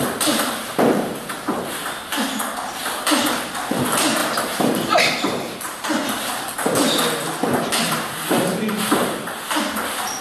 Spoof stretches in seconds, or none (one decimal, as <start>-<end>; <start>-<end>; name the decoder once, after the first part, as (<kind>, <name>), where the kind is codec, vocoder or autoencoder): 4.2-6.1 (vocoder, BigVGAN v2)